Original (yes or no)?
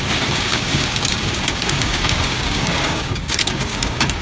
no